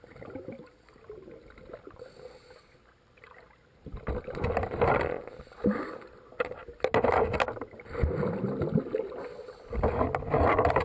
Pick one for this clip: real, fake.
real